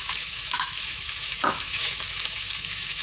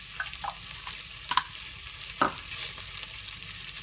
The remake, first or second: first